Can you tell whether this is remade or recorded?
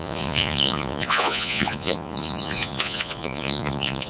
remade